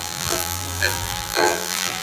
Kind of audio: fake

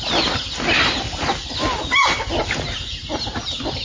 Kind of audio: real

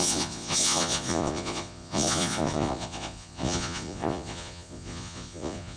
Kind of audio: fake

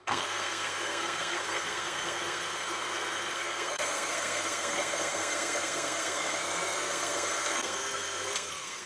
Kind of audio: fake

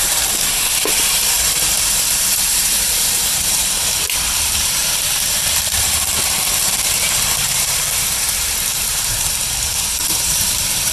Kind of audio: fake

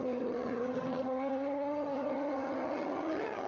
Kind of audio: fake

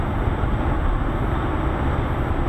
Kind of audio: fake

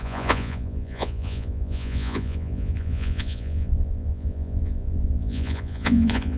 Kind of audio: fake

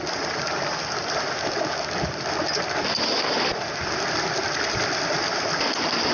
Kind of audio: real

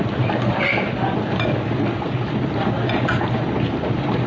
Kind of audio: real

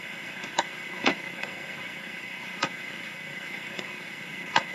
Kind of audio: fake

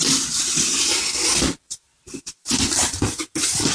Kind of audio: real